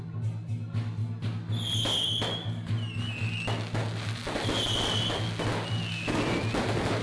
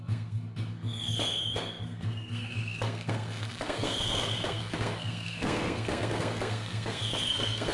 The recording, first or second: first